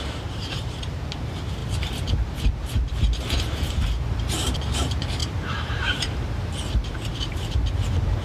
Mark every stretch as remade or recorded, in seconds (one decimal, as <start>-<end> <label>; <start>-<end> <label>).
0.0-8.2 remade